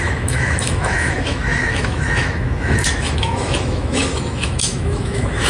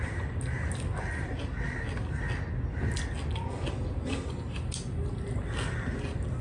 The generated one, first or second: first